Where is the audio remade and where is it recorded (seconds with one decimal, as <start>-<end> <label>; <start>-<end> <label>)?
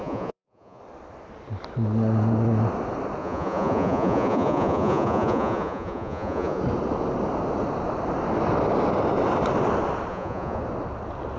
0.0-0.8 remade; 0.8-3.2 recorded; 3.2-6.6 remade; 6.6-10.1 recorded; 10.1-10.6 remade; 10.6-11.4 recorded